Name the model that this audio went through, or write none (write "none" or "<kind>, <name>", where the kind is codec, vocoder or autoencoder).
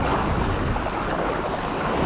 none